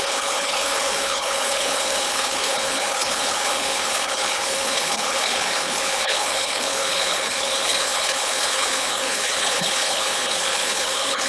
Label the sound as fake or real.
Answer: fake